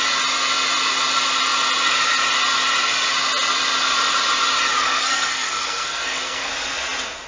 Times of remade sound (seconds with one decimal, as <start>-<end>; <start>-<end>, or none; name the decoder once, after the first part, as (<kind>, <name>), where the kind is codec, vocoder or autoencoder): 4.8-6.5 (codec, SNAC)